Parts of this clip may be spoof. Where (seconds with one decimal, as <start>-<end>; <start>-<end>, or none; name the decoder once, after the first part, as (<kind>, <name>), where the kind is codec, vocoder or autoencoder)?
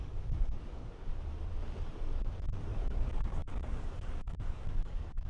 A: 0.0-1.1 (codec, DAC); 2.2-5.3